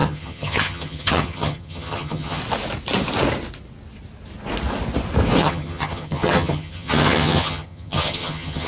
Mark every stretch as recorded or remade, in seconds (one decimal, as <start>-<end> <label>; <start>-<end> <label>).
0.0-2.4 remade; 2.4-5.4 recorded; 5.4-8.7 remade